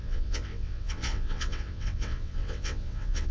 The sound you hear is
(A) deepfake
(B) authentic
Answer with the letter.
A